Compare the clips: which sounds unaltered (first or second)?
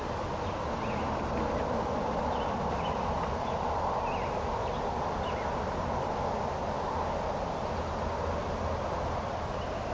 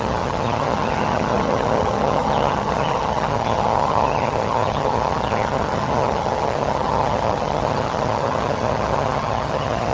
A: first